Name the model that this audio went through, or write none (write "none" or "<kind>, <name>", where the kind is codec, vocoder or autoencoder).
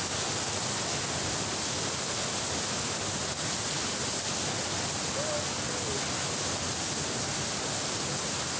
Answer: none